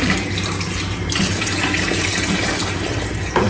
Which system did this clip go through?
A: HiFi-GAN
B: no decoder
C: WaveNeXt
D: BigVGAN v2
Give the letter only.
D